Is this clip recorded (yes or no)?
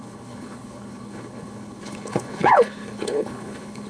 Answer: no